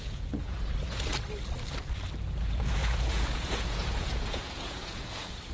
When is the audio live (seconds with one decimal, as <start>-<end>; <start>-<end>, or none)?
1.1-2.4